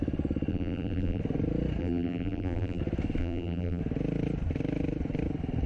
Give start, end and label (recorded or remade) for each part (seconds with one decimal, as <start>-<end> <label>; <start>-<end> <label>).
0.0-0.5 recorded; 0.5-1.2 remade; 1.2-1.8 recorded; 1.8-2.8 remade; 2.8-3.2 recorded; 3.2-3.8 remade; 3.8-5.7 recorded